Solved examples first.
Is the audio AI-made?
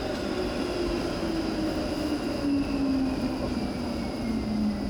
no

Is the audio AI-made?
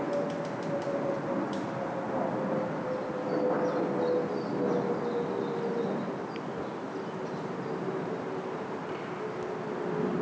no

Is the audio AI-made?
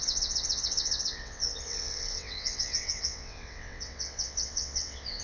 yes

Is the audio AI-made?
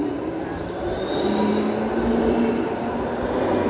no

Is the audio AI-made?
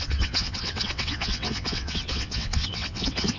yes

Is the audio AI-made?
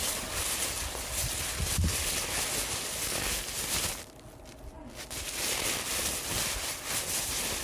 no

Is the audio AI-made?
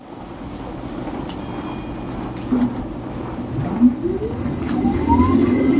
no